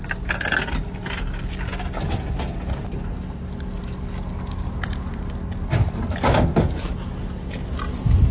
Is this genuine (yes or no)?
yes